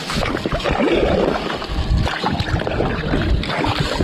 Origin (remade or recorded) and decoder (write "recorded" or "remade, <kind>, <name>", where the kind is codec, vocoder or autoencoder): recorded